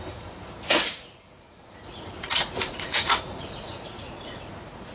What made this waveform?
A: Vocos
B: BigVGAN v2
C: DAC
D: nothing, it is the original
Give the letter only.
A